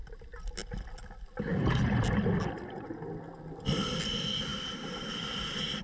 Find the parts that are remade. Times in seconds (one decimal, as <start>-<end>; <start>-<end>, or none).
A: 1.5-2.1; 4.5-5.8

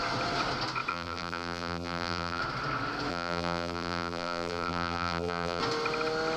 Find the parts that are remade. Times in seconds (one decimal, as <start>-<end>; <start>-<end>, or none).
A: 0.9-2.4; 3.1-5.6

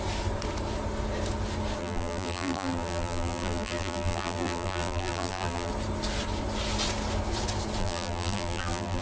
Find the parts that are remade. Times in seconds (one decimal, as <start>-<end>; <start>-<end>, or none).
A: 1.8-5.7; 7.8-9.0

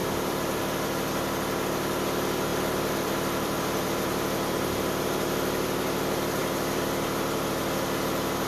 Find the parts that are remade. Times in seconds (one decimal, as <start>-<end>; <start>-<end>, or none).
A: 0.0-0.6; 2.5-4.6

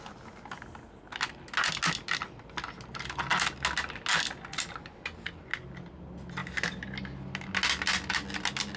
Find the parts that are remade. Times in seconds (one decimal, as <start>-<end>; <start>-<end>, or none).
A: none

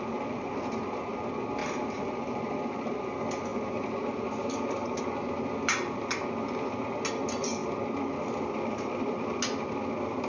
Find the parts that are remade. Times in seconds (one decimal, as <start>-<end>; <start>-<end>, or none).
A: 1.6-3.1; 3.5-5.0; 7.6-9.3

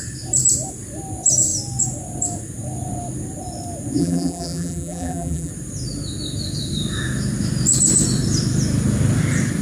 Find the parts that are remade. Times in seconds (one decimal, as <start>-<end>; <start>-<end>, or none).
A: 4.0-5.5

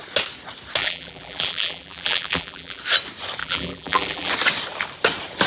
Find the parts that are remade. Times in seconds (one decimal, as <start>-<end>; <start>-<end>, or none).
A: 0.8-2.8; 3.4-4.3